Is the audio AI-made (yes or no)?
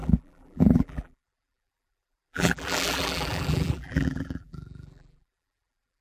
yes